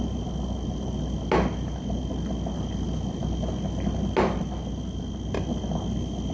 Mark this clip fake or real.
real